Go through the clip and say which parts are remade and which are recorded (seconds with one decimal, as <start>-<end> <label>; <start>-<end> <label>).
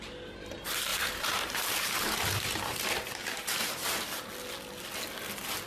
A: 0.0-0.9 recorded; 0.9-4.3 remade; 4.3-5.7 recorded